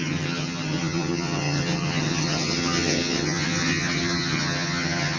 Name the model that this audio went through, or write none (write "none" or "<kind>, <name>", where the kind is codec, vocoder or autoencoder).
vocoder, HiFi-GAN